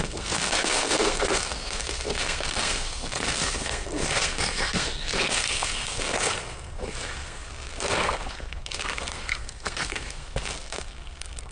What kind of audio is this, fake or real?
fake